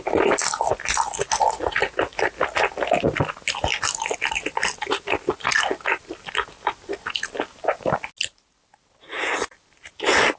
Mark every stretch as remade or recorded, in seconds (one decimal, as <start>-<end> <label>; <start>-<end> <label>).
0.0-10.4 recorded